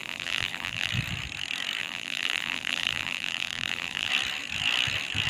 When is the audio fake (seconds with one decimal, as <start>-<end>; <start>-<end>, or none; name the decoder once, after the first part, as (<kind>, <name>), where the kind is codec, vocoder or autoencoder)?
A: 0.0-0.9 (vocoder, BigVGAN v2); 1.8-4.1